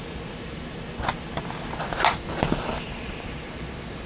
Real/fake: real